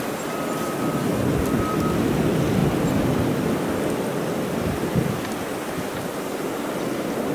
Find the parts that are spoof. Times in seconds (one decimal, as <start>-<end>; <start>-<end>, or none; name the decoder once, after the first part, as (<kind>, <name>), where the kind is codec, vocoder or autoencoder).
none